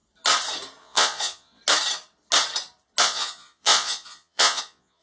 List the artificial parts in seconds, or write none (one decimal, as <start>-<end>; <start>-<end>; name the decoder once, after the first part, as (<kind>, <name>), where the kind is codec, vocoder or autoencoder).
0.8-1.6 (vocoder, Vocos); 3.0-5.0